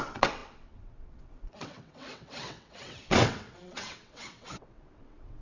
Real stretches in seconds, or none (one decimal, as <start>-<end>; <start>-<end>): none